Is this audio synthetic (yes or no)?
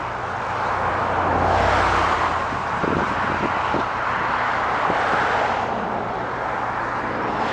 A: no